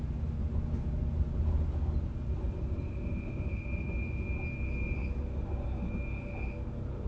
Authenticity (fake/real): real